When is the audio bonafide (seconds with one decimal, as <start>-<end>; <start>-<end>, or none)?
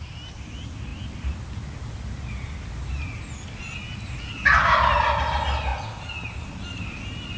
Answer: 0.0-7.4